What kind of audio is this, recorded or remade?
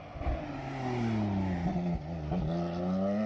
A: recorded